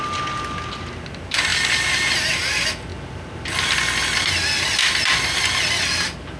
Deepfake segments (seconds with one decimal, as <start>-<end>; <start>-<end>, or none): none